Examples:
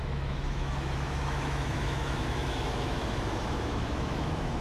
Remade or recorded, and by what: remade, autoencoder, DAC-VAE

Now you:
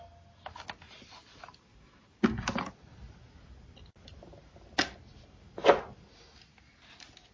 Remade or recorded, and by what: recorded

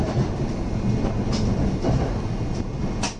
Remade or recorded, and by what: recorded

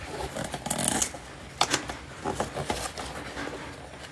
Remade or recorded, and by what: recorded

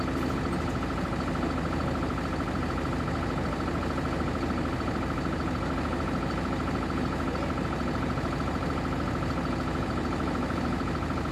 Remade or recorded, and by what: recorded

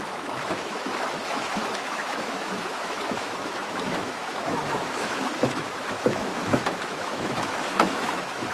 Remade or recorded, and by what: remade, autoencoder, DAC-VAE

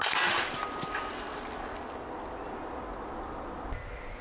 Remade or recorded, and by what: recorded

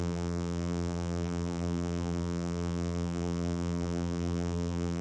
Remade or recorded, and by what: remade, vocoder, BigVGAN v2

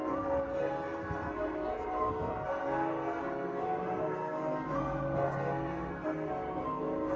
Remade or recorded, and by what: remade, codec, SNAC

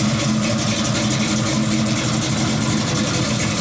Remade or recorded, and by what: recorded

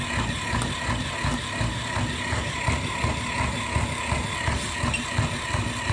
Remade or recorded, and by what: recorded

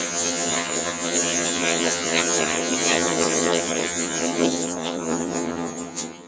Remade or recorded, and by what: remade, vocoder, HiFi-GAN